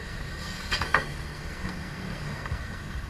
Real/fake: fake